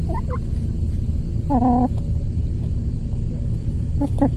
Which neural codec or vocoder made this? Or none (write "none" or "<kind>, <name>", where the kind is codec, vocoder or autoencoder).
none